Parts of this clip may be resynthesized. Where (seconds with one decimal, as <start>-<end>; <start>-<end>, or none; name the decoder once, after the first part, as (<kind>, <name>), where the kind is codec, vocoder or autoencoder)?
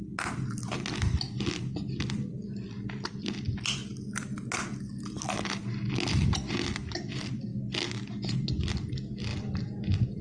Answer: none